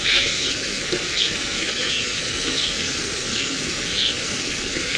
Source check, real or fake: fake